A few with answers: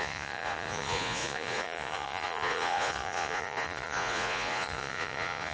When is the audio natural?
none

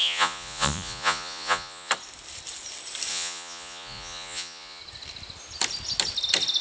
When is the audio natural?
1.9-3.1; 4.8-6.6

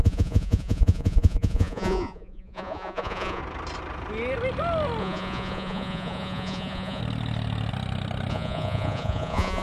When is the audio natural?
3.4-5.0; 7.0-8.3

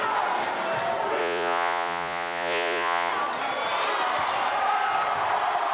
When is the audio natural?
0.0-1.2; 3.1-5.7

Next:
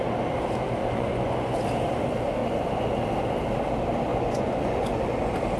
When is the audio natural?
0.0-0.8; 1.6-4.1; 5.0-5.6